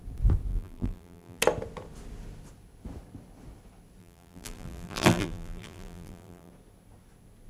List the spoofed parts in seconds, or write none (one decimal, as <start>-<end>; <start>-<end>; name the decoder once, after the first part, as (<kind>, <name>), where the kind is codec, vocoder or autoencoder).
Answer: 0.5-1.4 (vocoder, BigVGAN v2); 4.0-6.5